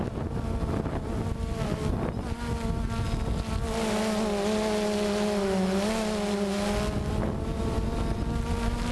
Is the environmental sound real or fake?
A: real